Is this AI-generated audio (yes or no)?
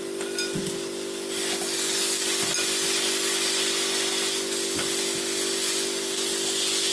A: no